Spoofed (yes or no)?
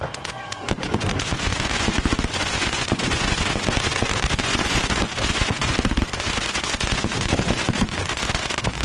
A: yes